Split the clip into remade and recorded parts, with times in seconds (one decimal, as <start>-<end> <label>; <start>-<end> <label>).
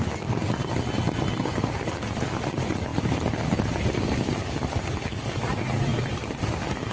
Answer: 0.0-6.9 recorded